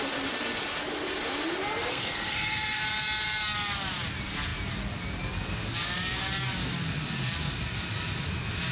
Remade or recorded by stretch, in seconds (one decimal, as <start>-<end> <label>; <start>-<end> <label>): 0.0-1.9 recorded; 1.9-2.8 remade; 2.8-8.7 recorded